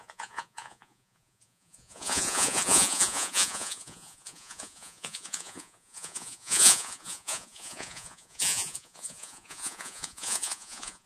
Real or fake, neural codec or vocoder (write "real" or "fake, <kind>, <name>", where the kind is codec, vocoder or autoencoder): fake, vocoder, Vocos